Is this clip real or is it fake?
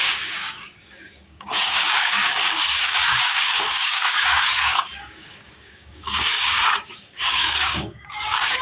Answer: fake